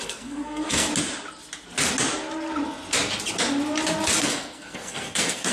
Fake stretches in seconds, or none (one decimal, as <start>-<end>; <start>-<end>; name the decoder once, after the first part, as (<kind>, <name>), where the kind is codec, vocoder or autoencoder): 0.0-0.9 (codec, SNAC); 4.2-5.5